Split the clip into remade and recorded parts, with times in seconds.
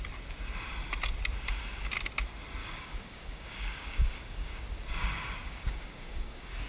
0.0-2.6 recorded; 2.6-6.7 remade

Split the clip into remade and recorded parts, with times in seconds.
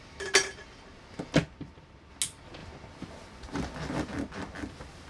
0.0-5.1 recorded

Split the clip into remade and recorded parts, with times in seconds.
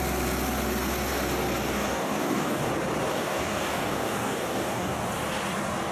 0.0-1.7 recorded; 1.7-2.7 remade; 2.7-3.1 recorded; 3.1-4.9 remade; 4.9-5.9 recorded